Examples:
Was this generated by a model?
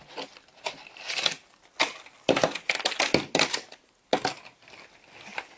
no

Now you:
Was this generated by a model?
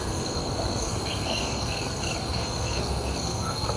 yes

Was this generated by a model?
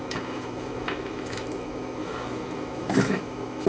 yes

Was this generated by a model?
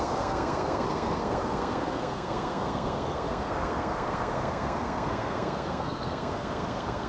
yes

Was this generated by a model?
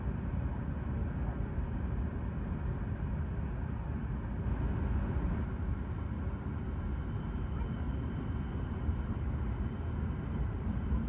no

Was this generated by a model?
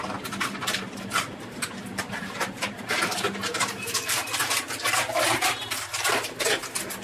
yes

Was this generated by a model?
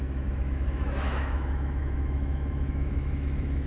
yes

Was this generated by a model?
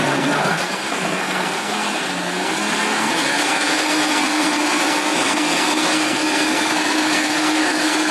yes